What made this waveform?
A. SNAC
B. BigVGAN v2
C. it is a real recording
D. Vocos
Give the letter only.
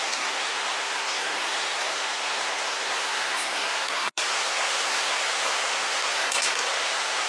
A